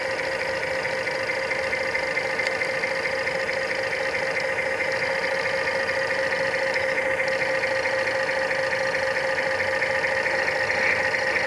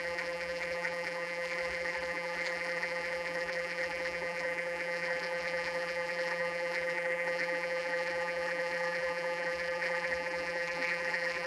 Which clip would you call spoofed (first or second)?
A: second